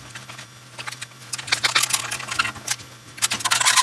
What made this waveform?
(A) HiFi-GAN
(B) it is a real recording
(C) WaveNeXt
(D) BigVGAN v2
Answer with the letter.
B